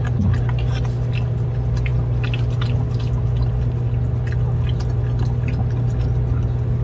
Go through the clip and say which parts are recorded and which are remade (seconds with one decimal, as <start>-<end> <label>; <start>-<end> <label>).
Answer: 0.0-6.8 recorded